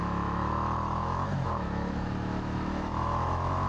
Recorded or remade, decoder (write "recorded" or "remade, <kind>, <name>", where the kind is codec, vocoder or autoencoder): remade, autoencoder, DAC-VAE